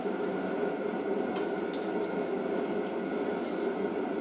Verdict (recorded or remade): recorded